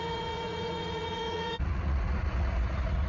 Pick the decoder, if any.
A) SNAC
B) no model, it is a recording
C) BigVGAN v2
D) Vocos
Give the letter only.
D